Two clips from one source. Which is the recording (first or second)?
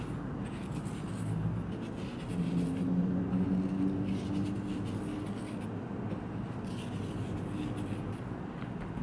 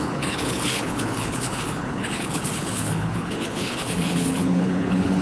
first